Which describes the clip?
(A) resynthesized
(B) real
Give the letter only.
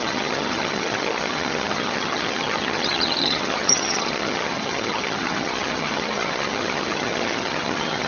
A